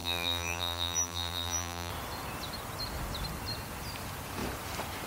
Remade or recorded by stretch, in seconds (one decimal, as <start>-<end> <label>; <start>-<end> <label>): 0.0-1.9 remade; 1.9-5.1 recorded